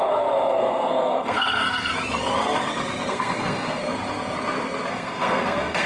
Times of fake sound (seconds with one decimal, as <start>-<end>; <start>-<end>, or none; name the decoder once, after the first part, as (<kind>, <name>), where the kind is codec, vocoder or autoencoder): 0.0-1.9 (codec, SNAC); 3.1-3.8; 4.9-5.9